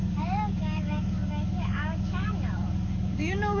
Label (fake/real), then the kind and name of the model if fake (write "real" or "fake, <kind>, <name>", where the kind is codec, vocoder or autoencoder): fake, codec, DAC